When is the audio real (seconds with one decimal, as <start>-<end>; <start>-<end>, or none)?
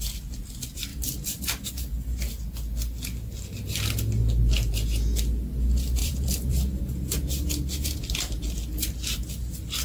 0.0-0.9; 1.7-6.0; 6.8-9.8